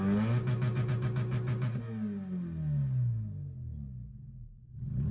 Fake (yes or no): no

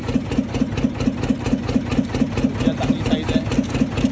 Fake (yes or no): no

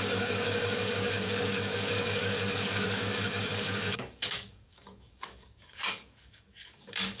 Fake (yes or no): yes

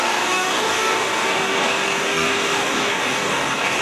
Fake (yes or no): yes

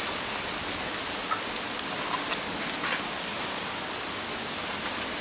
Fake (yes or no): no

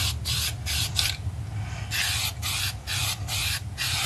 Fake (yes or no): no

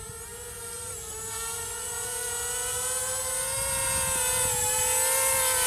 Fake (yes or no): no